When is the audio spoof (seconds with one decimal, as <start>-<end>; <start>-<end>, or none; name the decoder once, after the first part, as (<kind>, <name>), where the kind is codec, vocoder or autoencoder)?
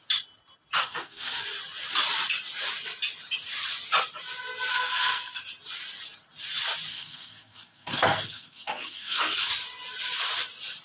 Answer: 0.8-1.4 (codec, SNAC); 4.7-5.4; 6.9-9.5